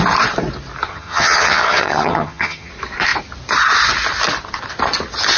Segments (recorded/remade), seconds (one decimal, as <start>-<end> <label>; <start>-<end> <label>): 0.0-0.9 recorded; 0.9-2.7 remade; 2.7-5.4 recorded